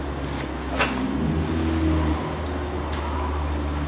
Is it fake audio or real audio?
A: real